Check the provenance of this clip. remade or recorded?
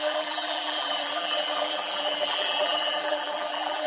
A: remade